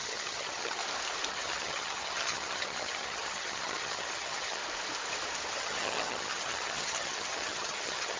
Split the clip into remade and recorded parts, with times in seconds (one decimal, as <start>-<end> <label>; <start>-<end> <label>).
0.0-0.8 remade; 0.8-1.3 recorded; 1.3-4.6 remade; 4.6-5.5 recorded; 5.5-8.2 remade